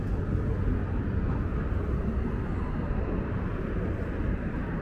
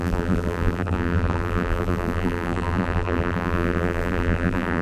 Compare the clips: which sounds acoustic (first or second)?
first